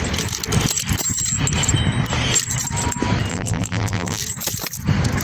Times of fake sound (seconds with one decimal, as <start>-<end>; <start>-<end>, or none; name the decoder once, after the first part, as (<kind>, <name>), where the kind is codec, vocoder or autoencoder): 3.3-4.2 (vocoder, BigVGAN v2)